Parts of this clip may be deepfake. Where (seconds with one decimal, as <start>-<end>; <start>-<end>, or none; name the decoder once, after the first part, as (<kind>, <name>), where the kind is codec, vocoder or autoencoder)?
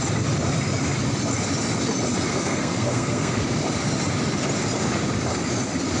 2.3-3.4 (codec, SNAC)